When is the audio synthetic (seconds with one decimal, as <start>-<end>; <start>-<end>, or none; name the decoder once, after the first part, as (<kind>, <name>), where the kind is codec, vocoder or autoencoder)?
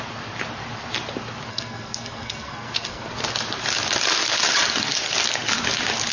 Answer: 1.5-3.1 (codec, SNAC)